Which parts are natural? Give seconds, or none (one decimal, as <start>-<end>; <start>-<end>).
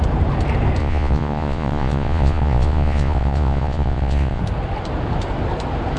0.0-0.8; 4.4-6.0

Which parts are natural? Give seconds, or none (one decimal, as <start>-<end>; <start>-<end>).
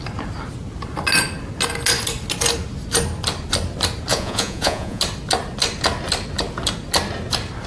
0.0-4.1; 5.0-7.7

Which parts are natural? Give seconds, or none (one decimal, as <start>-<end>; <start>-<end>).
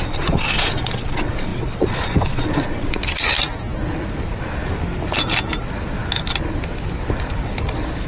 3.0-8.1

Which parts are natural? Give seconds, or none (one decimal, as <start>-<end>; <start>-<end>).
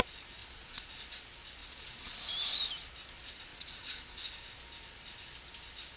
0.0-0.4; 0.9-1.6; 2.2-3.5; 4.3-6.0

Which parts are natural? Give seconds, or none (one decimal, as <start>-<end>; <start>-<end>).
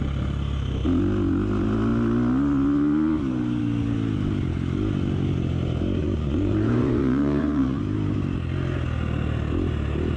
0.0-6.0; 7.8-10.2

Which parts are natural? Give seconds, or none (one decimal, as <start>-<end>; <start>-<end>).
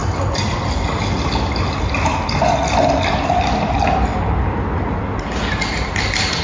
0.0-6.4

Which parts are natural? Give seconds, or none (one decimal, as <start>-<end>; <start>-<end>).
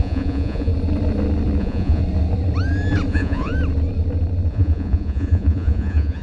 0.7-1.6; 2.0-3.1; 3.5-4.5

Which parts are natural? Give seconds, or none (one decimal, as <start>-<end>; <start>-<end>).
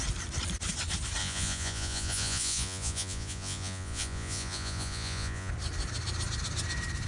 0.0-1.2; 5.5-7.1